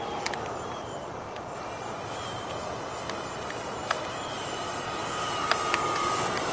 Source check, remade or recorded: remade